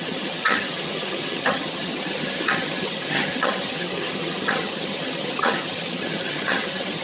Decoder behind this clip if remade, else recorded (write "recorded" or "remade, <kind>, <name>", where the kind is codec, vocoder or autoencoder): remade, vocoder, HiFi-GAN